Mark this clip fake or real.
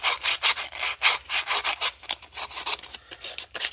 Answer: real